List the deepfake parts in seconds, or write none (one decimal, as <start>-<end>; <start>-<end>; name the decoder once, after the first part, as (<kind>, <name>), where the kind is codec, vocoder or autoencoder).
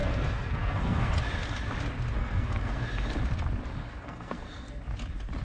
0.0-1.1 (codec, SNAC); 2.2-2.9; 3.8-4.8